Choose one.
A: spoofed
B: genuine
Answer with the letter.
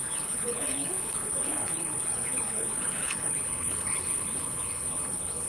A